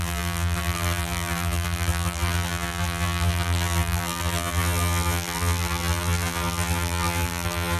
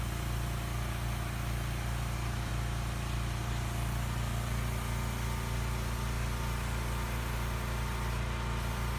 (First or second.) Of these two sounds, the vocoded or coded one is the first